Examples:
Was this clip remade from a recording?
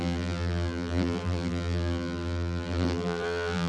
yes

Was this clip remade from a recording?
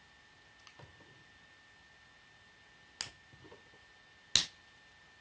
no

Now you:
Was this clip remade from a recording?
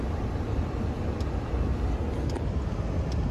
no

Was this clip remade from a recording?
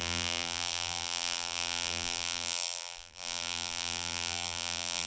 yes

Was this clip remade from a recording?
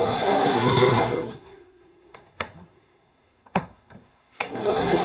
yes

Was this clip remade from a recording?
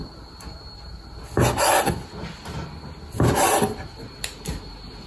no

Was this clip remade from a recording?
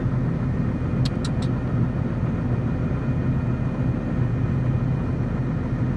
no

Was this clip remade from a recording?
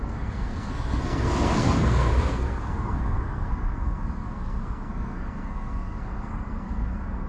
yes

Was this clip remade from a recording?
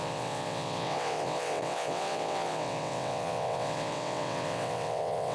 yes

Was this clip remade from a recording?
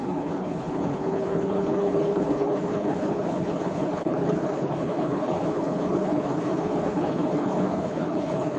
yes